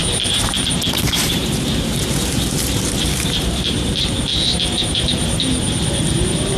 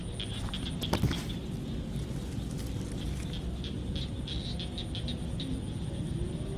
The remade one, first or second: first